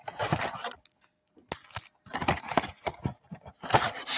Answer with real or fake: real